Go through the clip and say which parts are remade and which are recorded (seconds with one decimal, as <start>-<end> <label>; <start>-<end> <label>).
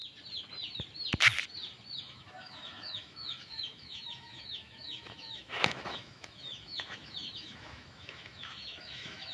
0.0-2.0 recorded; 2.0-9.3 remade